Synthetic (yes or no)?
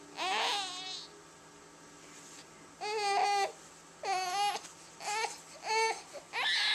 no